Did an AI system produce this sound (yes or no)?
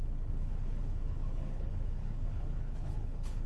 yes